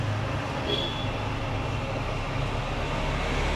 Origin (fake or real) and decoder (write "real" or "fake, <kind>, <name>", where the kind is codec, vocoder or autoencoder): real